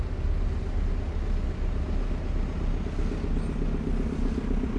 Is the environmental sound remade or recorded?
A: recorded